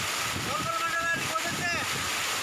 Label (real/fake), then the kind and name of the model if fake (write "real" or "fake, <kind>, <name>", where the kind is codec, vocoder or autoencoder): real